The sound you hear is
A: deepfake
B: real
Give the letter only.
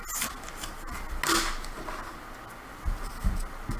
B